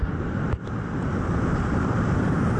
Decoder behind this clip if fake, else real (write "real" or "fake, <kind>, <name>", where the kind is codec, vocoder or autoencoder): fake, vocoder, BigVGAN v2